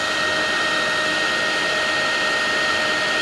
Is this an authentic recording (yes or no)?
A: yes